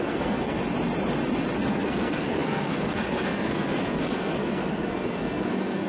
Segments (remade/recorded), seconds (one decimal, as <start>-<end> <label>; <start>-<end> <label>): 0.0-0.6 remade; 0.6-1.7 recorded; 1.7-5.9 remade